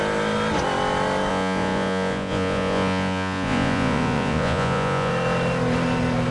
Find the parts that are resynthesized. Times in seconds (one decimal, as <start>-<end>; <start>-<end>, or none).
1.3-5.1